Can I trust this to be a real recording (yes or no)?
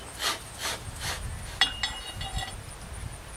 yes